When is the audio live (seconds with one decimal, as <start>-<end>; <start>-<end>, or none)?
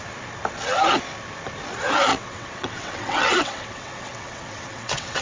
0.0-2.1